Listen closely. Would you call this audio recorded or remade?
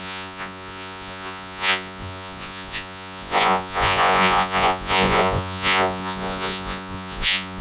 remade